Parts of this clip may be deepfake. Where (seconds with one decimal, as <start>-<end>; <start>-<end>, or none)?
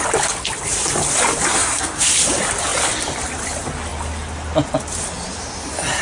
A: 1.5-2.1